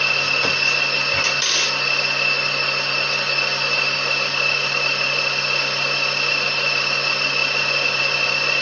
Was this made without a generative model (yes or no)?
yes